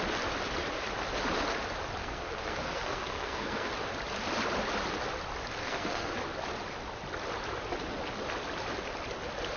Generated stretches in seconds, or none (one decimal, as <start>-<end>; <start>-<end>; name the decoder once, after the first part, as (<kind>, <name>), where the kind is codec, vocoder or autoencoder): 2.0-3.7 (codec, SNAC); 5.6-6.1

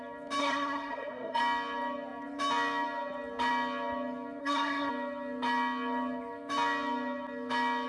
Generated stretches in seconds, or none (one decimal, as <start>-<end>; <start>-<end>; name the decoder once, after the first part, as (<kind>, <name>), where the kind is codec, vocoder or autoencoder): 0.4-1.4 (codec, SNAC); 4.4-4.9

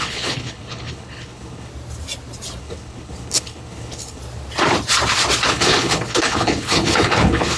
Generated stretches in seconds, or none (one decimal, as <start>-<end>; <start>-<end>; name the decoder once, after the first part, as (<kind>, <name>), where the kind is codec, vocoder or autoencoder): 0.0-1.7 (codec, HILCodec); 2.6-4.2; 5.5-7.6

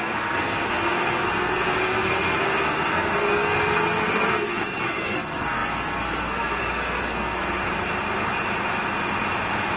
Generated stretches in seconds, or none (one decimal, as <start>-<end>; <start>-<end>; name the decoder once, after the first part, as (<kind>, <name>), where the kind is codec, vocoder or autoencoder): 0.0-7.6 (codec, SNAC)

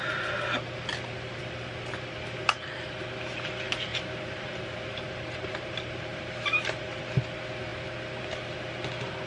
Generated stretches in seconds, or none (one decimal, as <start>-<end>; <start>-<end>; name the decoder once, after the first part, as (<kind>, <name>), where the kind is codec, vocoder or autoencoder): 3.9-7.0 (vocoder, BigVGAN v2)

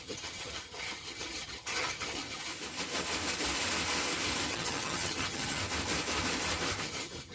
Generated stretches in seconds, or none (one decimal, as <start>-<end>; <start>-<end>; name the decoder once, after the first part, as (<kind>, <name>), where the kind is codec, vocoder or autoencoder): 0.0-2.5 (vocoder, HiFi-GAN); 4.5-5.6; 6.8-7.3

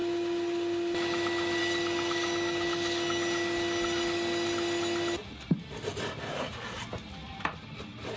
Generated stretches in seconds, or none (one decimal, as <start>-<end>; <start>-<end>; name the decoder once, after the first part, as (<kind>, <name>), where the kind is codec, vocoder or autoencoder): none

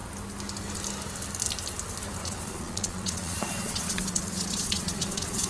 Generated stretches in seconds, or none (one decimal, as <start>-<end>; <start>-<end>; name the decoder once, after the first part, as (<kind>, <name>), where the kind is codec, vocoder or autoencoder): 2.2-5.5 (vocoder, Vocos)